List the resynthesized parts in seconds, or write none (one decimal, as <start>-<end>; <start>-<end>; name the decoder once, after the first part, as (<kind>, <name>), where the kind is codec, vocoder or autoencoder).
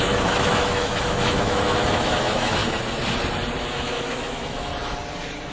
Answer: 0.0-2.6 (autoencoder, DAC-VAE); 3.6-4.7